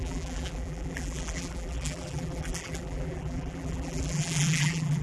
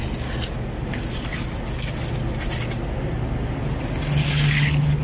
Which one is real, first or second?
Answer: second